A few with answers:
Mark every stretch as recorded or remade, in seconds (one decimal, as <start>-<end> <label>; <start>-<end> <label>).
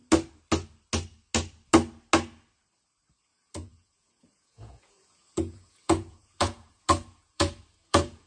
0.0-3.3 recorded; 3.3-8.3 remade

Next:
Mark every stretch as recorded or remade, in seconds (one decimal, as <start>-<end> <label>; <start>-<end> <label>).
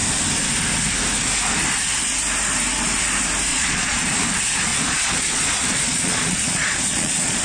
0.0-3.5 recorded; 3.5-4.0 remade; 4.0-4.7 recorded; 4.7-7.4 remade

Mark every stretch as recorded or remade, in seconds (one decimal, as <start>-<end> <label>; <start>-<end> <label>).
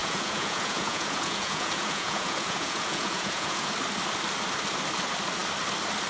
0.0-3.7 remade; 3.7-6.1 recorded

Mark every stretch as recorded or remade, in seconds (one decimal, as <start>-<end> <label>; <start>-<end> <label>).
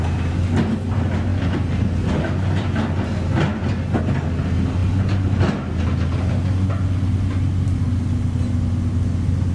0.0-9.5 recorded